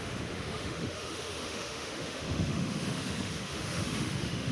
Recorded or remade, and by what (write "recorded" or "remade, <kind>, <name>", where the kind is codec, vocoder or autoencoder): remade, autoencoder, DAC-VAE